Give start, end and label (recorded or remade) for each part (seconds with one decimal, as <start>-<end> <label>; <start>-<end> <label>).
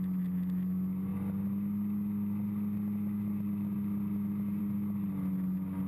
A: 0.0-5.9 recorded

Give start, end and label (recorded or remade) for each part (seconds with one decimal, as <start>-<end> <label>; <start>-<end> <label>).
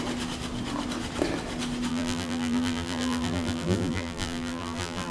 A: 0.0-1.9 recorded; 1.9-5.1 remade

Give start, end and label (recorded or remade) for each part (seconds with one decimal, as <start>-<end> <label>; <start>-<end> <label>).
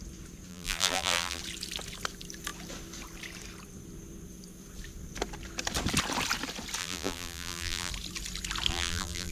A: 0.0-0.5 recorded; 0.5-1.4 remade; 1.4-6.8 recorded; 6.8-7.9 remade; 7.9-8.7 recorded; 8.7-9.3 remade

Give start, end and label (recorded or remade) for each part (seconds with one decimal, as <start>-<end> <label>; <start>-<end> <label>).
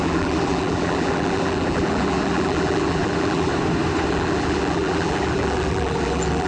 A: 0.0-3.5 remade; 3.5-4.1 recorded; 4.1-6.5 remade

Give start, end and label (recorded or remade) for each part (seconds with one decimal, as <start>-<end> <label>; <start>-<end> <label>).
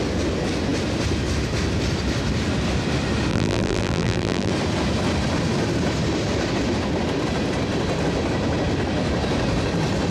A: 0.0-3.3 recorded; 3.3-4.5 remade; 4.5-10.1 recorded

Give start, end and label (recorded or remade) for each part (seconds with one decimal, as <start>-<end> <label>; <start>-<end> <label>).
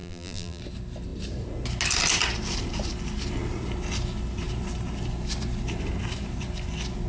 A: 0.0-0.6 remade; 0.6-7.1 recorded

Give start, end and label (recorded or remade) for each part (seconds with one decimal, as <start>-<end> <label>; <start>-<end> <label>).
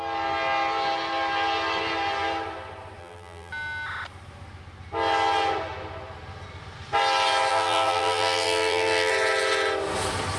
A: 0.0-3.0 recorded; 3.0-3.5 remade; 3.5-7.5 recorded; 7.5-9.1 remade; 9.1-10.4 recorded